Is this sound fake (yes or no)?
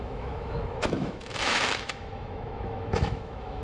yes